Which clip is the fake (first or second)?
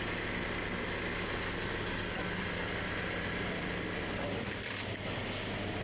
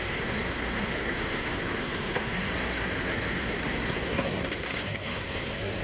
second